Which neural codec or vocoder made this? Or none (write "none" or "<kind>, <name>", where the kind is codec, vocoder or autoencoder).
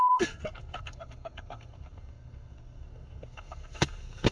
codec, SNAC